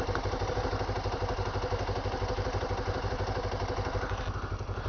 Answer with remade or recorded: recorded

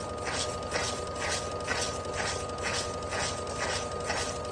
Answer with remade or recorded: recorded